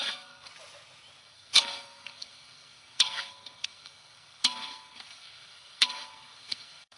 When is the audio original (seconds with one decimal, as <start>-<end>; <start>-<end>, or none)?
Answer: 0.5-1.2